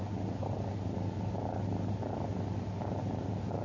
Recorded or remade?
recorded